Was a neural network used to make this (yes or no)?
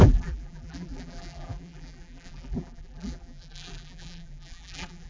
yes